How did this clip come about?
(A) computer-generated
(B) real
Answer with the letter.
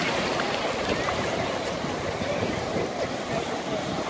B